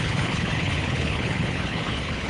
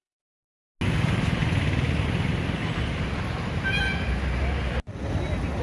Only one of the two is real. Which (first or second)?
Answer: second